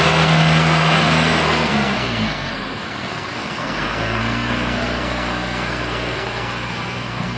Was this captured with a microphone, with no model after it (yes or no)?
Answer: no